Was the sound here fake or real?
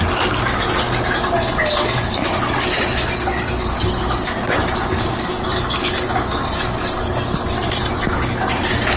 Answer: real